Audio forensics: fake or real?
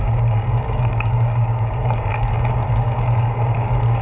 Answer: fake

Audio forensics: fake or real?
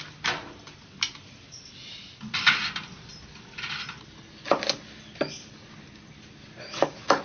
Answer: real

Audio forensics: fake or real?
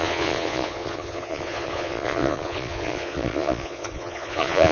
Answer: fake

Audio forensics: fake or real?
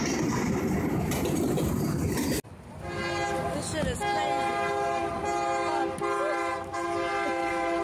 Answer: real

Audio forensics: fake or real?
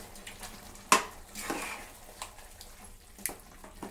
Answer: real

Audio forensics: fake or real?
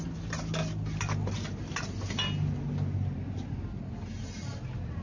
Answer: real